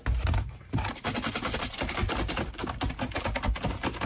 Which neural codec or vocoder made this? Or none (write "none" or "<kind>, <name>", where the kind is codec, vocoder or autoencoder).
none